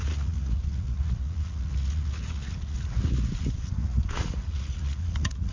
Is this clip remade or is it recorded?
remade